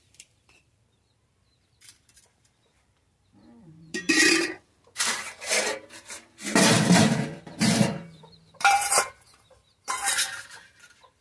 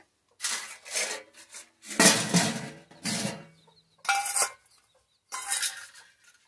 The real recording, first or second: second